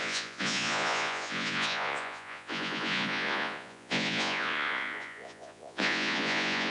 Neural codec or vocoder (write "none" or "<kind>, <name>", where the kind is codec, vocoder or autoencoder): vocoder, Vocos